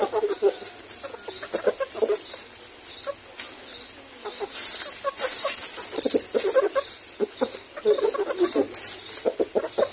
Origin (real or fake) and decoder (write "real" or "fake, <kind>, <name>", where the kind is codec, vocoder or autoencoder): real